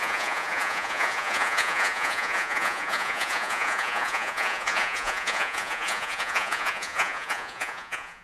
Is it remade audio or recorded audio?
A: remade